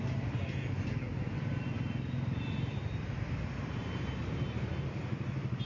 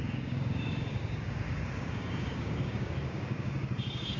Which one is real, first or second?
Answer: first